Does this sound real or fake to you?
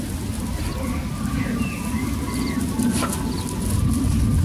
real